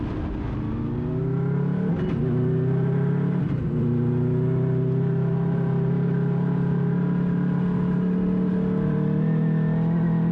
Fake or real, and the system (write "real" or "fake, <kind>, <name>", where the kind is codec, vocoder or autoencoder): real